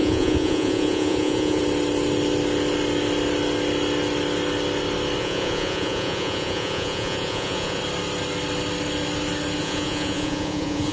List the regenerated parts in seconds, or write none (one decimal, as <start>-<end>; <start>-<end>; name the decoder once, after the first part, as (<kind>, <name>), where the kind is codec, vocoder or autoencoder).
0.0-1.6 (vocoder, Vocos); 5.2-7.8; 9.6-10.9